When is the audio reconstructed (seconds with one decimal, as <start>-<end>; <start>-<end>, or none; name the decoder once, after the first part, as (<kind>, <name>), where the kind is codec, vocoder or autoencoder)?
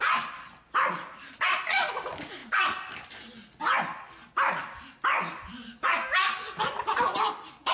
none